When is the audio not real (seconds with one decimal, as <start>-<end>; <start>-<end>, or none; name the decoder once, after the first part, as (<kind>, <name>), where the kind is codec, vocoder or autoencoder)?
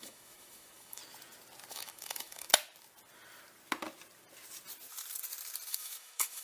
0.0-1.0 (autoencoder, DAC-VAE); 1.7-2.5; 5.7-6.4